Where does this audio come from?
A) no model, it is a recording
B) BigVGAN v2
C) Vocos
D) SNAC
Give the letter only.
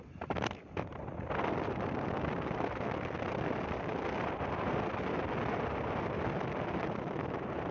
A